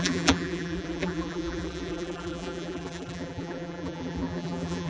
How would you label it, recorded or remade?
remade